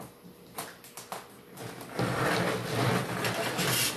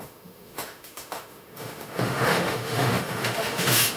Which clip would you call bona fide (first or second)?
first